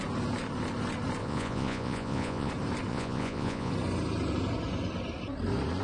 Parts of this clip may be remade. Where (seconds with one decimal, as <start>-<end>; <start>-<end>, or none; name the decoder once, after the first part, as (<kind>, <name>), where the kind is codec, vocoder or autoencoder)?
1.2-2.5 (vocoder, Vocos); 2.9-3.7